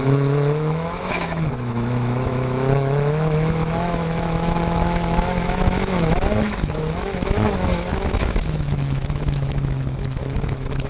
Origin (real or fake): fake